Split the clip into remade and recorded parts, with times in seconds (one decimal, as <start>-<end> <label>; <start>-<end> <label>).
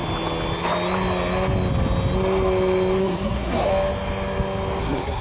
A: 0.0-3.0 recorded; 3.0-3.7 remade; 3.7-4.8 recorded; 4.8-5.2 remade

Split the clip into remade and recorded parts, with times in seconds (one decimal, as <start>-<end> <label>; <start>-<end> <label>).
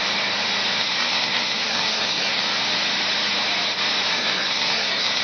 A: 0.0-0.8 recorded; 0.8-2.4 remade; 2.4-4.1 recorded; 4.1-5.2 remade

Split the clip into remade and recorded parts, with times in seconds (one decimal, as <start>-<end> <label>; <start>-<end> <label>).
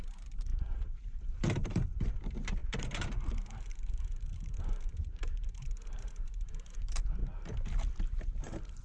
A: 0.0-7.2 remade; 7.2-8.4 recorded; 8.4-8.8 remade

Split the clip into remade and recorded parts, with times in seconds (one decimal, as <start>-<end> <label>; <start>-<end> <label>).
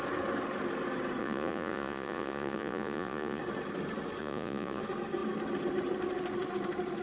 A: 0.0-1.2 recorded; 1.2-3.4 remade; 3.4-4.2 recorded; 4.2-4.8 remade; 4.8-7.0 recorded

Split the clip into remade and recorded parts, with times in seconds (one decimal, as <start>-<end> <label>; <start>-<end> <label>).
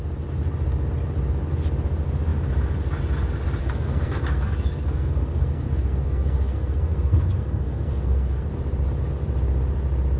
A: 0.0-3.6 recorded; 3.6-8.5 remade; 8.5-10.2 recorded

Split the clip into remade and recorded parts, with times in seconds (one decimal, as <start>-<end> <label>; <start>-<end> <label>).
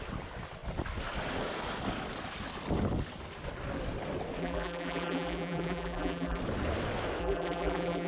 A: 0.0-4.4 recorded; 4.4-6.4 remade; 6.4-7.2 recorded; 7.2-8.1 remade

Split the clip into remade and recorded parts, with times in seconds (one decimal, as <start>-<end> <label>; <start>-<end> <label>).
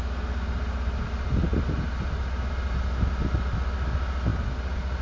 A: 0.0-5.0 recorded